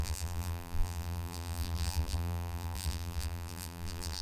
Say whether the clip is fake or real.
fake